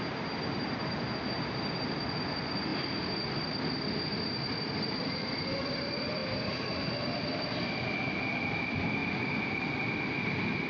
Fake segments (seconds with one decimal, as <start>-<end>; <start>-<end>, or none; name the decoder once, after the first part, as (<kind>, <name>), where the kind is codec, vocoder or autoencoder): 0.0-9.0 (vocoder, BigVGAN v2); 10.0-10.7